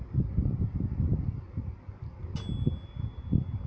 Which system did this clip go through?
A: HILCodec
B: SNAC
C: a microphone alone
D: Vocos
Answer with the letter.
C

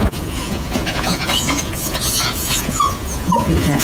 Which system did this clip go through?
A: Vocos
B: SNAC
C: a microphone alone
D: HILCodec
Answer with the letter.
A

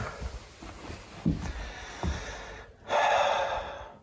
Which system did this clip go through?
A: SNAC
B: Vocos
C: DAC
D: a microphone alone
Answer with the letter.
D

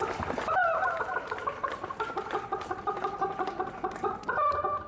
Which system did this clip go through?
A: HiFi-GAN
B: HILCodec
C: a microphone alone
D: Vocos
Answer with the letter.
C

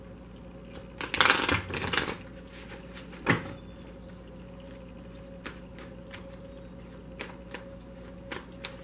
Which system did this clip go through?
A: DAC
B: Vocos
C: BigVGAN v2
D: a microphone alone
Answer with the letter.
D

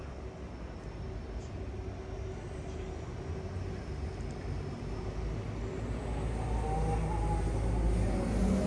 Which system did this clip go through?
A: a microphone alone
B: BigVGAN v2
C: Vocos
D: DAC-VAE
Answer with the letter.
A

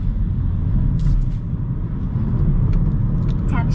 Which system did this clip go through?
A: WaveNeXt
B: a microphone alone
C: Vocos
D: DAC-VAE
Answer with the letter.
B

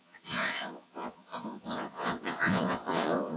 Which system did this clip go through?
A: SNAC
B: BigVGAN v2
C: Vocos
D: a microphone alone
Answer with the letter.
C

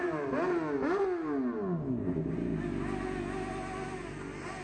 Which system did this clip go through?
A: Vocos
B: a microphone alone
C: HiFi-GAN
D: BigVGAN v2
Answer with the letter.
B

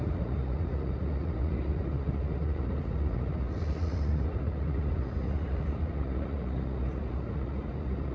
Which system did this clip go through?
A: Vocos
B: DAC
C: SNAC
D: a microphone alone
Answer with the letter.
A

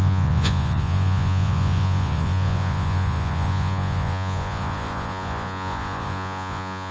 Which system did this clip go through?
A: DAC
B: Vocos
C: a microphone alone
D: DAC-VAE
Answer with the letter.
B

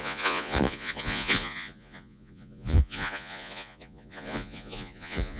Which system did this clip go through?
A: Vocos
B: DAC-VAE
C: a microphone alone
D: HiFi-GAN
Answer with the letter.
A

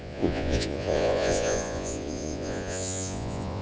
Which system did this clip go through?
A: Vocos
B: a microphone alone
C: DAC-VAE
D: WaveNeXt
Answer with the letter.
A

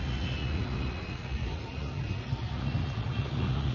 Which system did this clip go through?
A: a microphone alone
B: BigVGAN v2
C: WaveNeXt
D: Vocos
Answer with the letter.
D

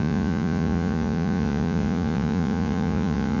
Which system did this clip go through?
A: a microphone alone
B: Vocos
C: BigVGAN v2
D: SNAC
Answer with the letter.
B